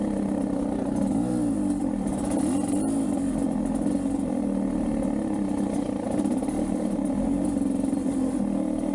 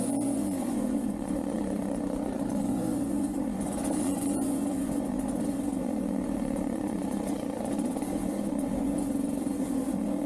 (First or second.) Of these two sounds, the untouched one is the first